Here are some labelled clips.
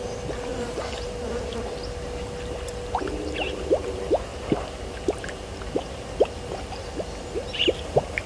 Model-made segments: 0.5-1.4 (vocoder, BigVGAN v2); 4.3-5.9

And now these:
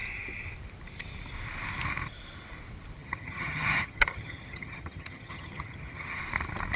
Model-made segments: 3.0-6.2 (vocoder, HiFi-GAN)

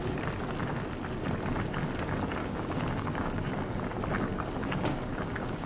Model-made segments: 2.4-3.5 (codec, DAC); 4.3-5.7

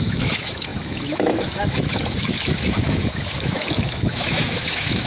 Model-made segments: 0.0-5.1 (autoencoder, DAC-VAE)

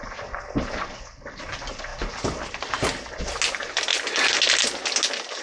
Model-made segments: none